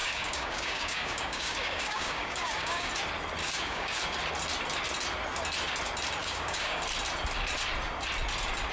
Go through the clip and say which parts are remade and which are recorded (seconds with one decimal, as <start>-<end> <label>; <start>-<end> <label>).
0.0-2.9 remade; 2.9-3.4 recorded; 3.4-4.0 remade; 4.0-6.2 recorded; 6.2-6.8 remade; 6.8-8.7 recorded